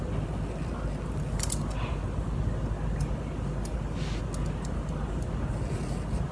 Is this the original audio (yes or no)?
yes